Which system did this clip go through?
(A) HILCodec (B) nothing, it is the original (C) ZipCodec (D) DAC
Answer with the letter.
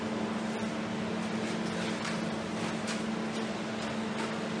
B